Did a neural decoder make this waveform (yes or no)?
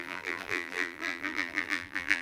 yes